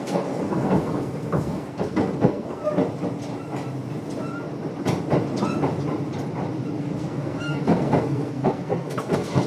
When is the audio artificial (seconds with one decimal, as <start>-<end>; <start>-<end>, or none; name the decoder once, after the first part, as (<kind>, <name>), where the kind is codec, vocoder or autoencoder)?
0.0-2.6 (codec, SNAC); 6.8-9.5